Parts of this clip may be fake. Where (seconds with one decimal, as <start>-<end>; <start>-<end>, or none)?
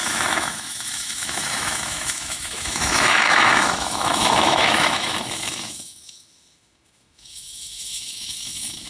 0.0-8.9